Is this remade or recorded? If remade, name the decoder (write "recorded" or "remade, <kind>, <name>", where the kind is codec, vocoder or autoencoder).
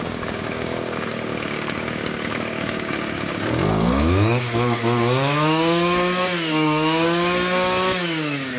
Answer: remade, codec, DAC